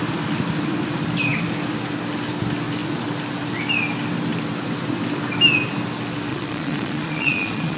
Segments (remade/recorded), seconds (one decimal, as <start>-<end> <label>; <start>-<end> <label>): 0.0-6.3 recorded; 6.3-7.8 remade